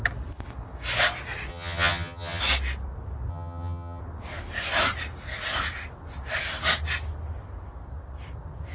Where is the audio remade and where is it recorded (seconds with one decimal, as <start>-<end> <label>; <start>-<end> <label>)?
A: 0.0-1.5 recorded; 1.5-2.4 remade; 2.4-3.3 recorded; 3.3-4.0 remade; 4.0-8.7 recorded

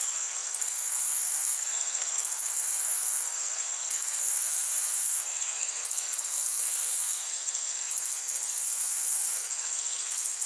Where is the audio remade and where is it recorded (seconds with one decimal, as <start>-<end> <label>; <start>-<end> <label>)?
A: 0.0-10.5 remade